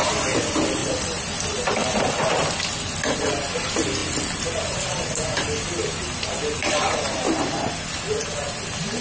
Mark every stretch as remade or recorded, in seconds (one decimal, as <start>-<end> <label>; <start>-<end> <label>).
0.0-0.8 recorded; 0.8-2.0 remade; 2.0-4.0 recorded; 4.0-7.7 remade; 7.7-9.0 recorded